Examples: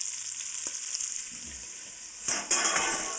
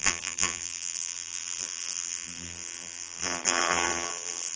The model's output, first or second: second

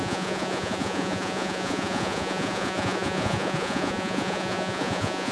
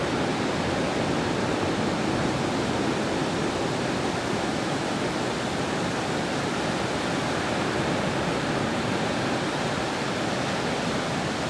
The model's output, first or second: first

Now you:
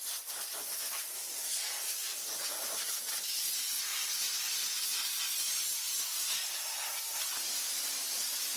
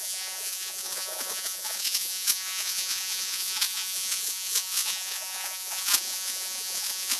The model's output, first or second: second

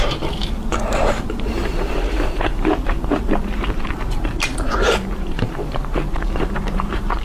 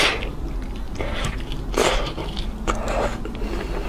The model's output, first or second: first